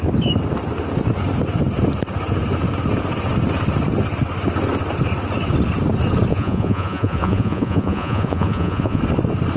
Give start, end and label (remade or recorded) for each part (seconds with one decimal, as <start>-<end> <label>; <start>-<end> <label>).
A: 0.0-6.3 recorded; 6.3-9.0 remade; 9.0-9.6 recorded